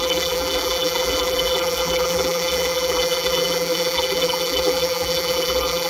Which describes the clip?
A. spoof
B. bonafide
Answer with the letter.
A